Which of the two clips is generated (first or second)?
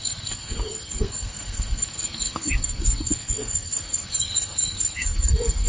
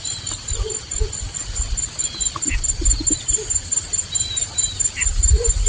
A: first